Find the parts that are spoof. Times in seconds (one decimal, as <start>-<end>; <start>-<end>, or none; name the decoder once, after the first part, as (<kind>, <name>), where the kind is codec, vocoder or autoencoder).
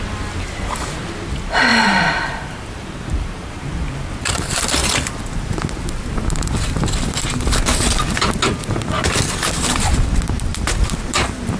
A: 1.7-3.5 (vocoder, BigVGAN v2)